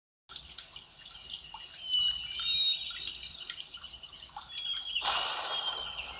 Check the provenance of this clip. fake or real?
real